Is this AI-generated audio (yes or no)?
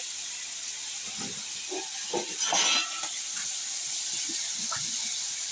no